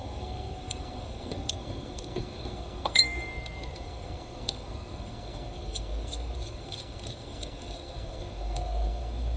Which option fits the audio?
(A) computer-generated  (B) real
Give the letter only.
A